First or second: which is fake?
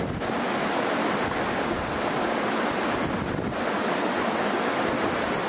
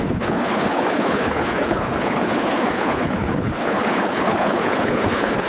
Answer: second